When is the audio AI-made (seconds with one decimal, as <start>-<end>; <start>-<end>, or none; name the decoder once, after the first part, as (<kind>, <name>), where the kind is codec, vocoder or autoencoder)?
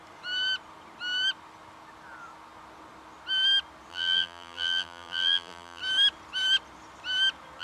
3.9-5.8 (vocoder, BigVGAN v2)